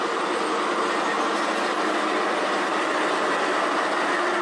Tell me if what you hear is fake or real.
real